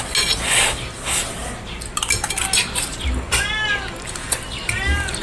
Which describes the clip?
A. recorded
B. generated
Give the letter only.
A